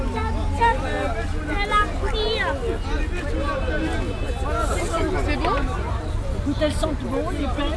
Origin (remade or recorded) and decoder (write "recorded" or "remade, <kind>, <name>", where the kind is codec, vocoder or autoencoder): recorded